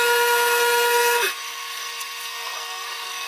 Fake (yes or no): yes